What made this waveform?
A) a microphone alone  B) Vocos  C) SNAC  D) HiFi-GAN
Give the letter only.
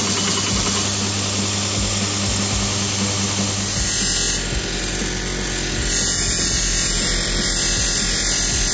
A